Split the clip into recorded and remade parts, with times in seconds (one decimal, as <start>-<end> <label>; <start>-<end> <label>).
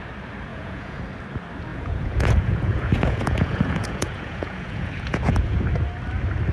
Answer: 0.0-0.5 recorded; 0.5-1.0 remade; 1.0-1.7 recorded; 1.7-5.6 remade; 5.6-6.5 recorded